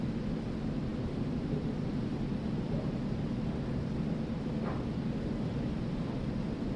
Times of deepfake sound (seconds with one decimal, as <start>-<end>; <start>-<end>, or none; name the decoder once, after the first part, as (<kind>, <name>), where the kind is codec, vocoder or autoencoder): none